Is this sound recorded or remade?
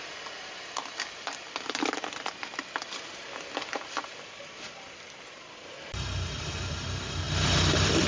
recorded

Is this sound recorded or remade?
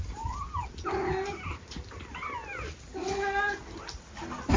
recorded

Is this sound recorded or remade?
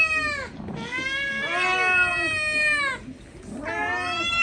recorded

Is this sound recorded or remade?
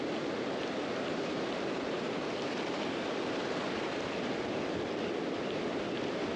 recorded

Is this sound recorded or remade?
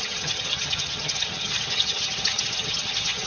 remade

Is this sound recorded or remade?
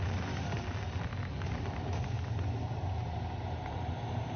recorded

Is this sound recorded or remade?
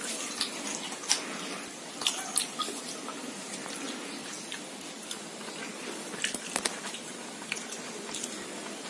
recorded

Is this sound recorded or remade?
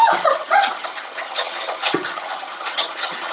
remade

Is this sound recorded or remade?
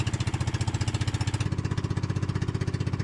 recorded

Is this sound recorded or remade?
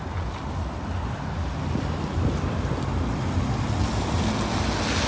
recorded